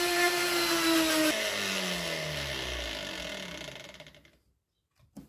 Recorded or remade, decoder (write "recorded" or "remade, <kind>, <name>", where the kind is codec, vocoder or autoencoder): recorded